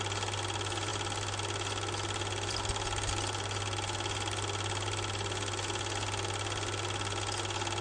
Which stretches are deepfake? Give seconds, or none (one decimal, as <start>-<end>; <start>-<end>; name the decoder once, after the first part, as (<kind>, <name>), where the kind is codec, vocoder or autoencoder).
none